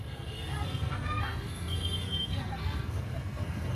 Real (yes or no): no